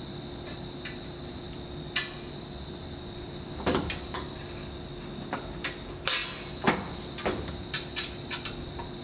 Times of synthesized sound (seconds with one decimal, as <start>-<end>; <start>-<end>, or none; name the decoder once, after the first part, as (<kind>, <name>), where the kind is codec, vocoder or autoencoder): none